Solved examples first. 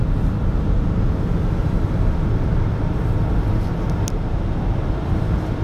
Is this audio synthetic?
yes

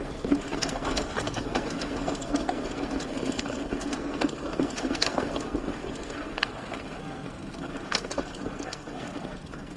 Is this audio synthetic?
yes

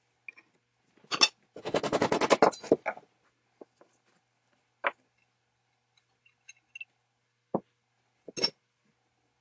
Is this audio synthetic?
no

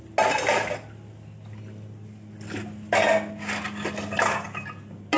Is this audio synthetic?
no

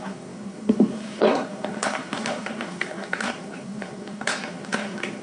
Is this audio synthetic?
yes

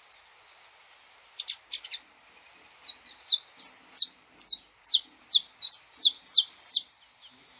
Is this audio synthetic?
no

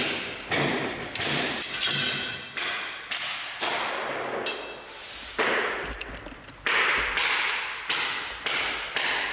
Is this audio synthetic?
no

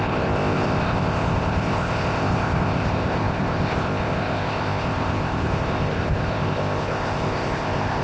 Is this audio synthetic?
yes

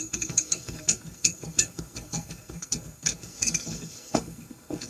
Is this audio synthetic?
yes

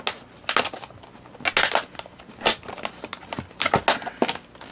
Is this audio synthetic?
no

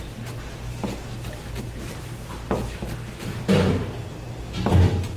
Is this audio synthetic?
no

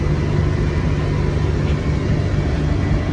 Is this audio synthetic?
no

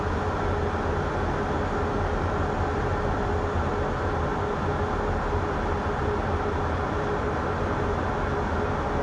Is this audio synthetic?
no